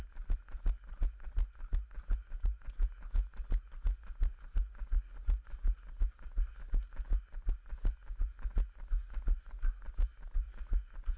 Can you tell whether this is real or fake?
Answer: real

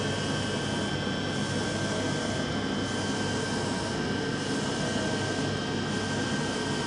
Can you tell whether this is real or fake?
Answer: real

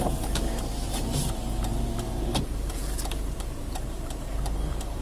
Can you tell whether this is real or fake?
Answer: fake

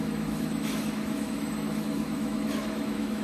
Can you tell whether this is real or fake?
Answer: fake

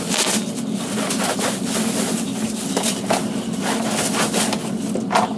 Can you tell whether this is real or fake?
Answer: real